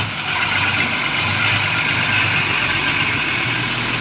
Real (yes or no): yes